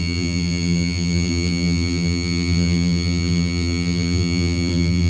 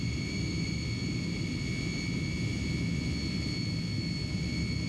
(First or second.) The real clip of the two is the second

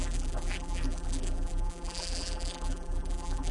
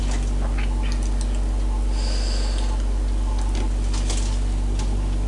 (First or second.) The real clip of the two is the second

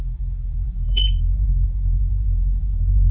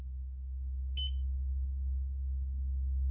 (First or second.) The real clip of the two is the second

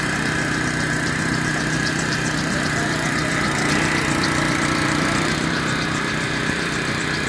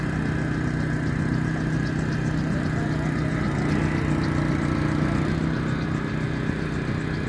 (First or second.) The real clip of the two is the second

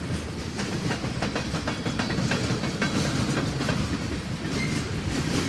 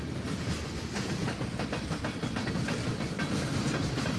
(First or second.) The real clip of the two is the first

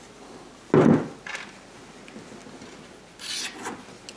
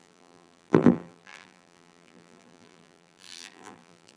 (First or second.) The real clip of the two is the first